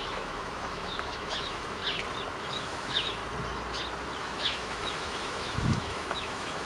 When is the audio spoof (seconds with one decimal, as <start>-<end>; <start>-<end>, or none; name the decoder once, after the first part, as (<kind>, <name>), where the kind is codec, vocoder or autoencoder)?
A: 0.0-1.8 (autoencoder, DAC-VAE); 2.4-3.2; 4.2-6.7

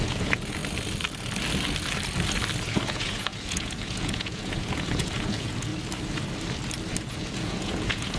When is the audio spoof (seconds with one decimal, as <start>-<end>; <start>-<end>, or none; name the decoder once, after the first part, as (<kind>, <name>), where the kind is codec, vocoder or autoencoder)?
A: 0.0-0.6 (vocoder, Vocos); 2.6-5.7; 7.0-8.2

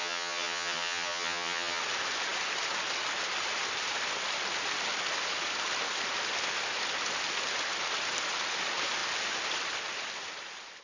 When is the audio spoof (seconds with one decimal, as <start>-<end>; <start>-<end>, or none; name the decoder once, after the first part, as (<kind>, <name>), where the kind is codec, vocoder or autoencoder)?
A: 0.0-1.8 (vocoder, HiFi-GAN)

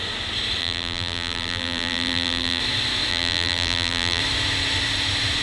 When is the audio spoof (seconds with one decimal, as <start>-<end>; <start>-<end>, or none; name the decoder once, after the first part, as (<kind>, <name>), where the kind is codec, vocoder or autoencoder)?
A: 0.6-2.6 (vocoder, BigVGAN v2); 3.1-4.2

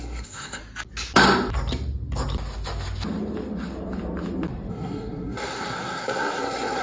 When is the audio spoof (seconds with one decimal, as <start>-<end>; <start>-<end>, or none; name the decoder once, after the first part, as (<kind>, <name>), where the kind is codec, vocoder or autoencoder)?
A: 0.0-0.6 (codec, SNAC); 4.7-6.8

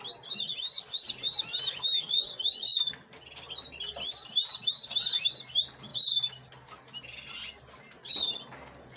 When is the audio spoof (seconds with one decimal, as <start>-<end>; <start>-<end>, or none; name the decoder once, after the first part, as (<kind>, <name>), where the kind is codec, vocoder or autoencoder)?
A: 2.0-2.8 (vocoder, Vocos)

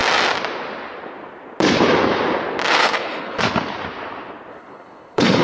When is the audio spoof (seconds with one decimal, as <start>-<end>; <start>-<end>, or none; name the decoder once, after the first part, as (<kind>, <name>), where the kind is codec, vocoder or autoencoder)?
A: 2.8-3.4 (codec, HILCodec); 4.5-5.4